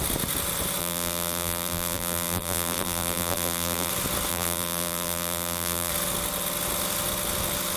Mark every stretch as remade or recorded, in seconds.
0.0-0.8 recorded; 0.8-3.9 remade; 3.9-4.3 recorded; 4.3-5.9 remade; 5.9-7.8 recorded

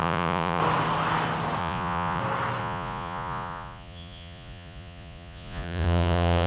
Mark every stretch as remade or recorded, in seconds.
0.0-0.6 remade; 0.6-1.6 recorded; 1.6-2.2 remade; 2.2-2.6 recorded; 2.6-6.5 remade

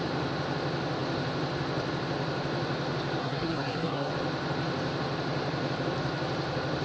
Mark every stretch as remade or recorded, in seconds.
0.0-3.2 recorded; 3.2-4.1 remade; 4.1-6.8 recorded

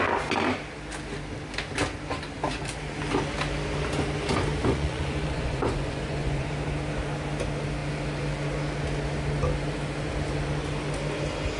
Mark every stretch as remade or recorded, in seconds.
0.0-4.6 recorded; 4.6-6.5 remade; 6.5-11.6 recorded